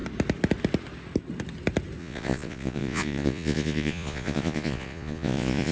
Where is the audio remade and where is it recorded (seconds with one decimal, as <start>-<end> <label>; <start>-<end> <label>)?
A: 0.0-2.0 recorded; 2.0-5.7 remade